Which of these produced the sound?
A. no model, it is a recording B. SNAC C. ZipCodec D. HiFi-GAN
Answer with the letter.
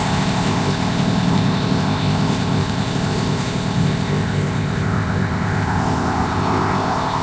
C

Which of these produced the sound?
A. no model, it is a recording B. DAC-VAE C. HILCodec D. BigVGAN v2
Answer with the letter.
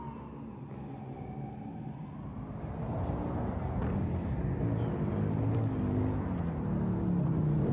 A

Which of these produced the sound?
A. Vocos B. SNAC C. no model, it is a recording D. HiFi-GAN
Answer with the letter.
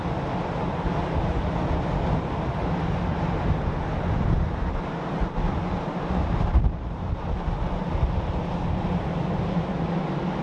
C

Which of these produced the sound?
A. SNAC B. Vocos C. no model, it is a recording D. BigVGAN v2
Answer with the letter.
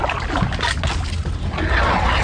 C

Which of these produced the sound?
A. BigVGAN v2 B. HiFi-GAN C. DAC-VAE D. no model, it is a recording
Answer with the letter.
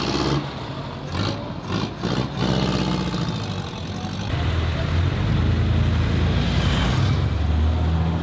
D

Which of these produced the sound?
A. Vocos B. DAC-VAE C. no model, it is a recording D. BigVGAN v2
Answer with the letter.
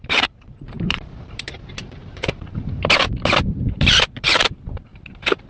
D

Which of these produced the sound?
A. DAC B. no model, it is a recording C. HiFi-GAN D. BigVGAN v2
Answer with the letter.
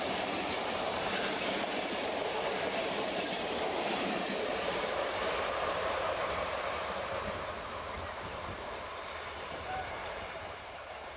D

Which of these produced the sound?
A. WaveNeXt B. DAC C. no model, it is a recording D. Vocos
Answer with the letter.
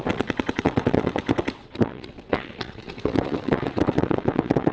A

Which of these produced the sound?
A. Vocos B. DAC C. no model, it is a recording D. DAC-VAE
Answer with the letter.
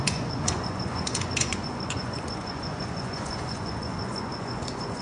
A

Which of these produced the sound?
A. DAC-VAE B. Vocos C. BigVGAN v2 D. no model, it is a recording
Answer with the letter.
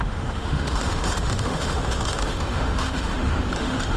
A